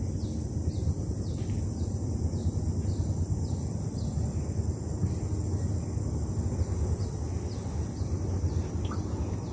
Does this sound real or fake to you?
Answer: real